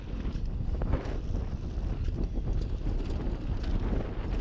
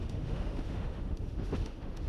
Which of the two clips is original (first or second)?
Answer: first